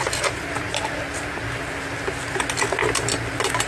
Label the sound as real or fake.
real